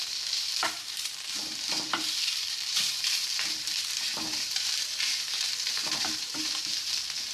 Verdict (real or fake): fake